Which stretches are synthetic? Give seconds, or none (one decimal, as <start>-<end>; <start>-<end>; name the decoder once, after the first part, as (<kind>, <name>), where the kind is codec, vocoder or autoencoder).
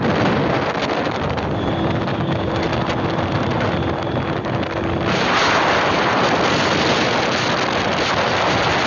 2.1-2.6 (codec, DAC)